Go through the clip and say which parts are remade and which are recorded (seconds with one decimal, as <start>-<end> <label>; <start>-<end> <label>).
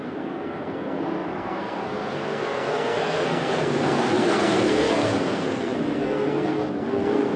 0.0-7.4 remade